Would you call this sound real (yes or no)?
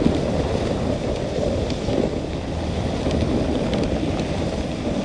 yes